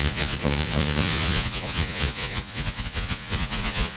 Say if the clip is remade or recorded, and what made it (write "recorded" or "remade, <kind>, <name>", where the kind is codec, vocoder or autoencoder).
remade, vocoder, Vocos